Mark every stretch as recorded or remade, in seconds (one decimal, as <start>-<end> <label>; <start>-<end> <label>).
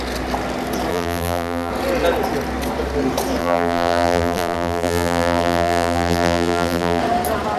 0.0-0.9 recorded; 0.9-1.7 remade; 1.7-3.4 recorded; 3.4-7.0 remade; 7.0-7.6 recorded